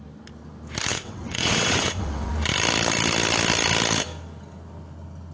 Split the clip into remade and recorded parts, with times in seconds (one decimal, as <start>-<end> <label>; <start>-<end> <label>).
0.0-0.9 recorded; 0.9-2.3 remade; 2.3-5.3 recorded